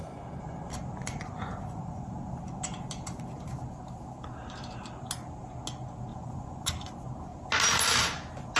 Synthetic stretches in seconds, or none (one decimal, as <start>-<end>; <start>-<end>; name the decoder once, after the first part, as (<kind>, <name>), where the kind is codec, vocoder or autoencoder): 1.0-2.1 (vocoder, Vocos); 6.1-6.7